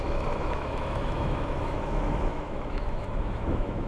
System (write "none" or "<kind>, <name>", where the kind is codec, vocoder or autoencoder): autoencoder, DAC-VAE